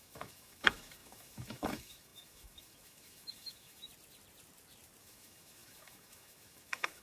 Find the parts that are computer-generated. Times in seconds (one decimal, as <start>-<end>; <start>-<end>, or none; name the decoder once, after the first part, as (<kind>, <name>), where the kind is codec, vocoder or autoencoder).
0.0-3.9 (autoencoder, DAC-VAE); 5.0-7.0